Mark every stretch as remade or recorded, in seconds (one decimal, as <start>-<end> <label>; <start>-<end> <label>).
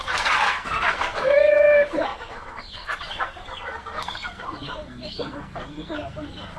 0.0-6.6 remade